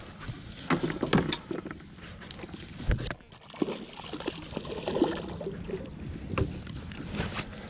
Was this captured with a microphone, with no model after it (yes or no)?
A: yes